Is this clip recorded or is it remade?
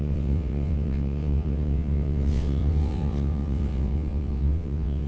remade